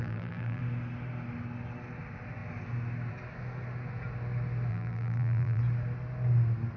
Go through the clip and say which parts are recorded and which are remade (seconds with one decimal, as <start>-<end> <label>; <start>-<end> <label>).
0.0-0.6 remade; 0.6-4.7 recorded; 4.7-5.6 remade; 5.6-6.8 recorded